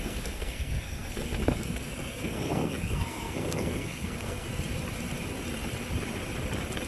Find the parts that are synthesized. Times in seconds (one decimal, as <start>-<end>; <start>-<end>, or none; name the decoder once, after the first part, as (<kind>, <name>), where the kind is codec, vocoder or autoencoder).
0.0-4.5 (codec, SNAC)